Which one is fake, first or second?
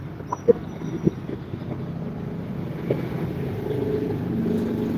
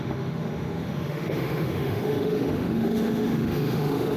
second